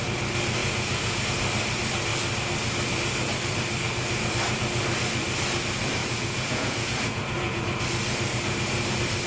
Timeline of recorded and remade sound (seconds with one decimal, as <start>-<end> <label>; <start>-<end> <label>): 0.0-0.6 recorded; 0.6-1.2 remade; 1.2-6.0 recorded; 6.0-7.6 remade; 7.6-9.3 recorded